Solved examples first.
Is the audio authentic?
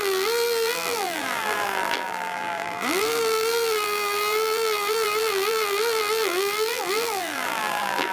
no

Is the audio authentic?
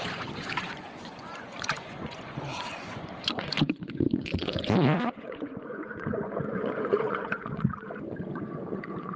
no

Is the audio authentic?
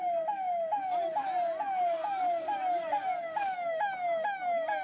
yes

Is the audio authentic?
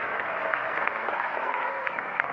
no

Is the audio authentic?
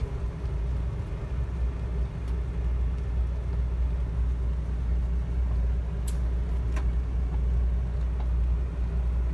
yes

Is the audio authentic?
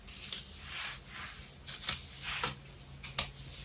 yes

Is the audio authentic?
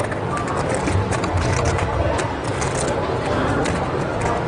yes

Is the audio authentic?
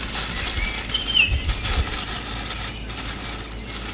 yes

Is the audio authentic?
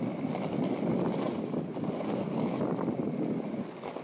yes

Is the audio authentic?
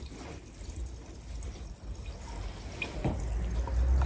yes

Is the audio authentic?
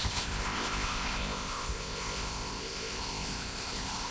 no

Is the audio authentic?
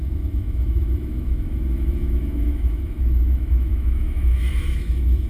no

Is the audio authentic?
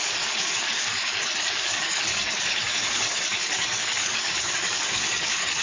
no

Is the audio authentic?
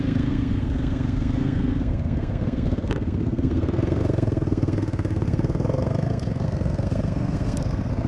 no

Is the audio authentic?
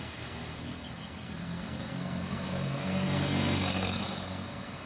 no